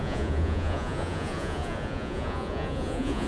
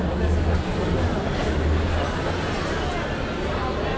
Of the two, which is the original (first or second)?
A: second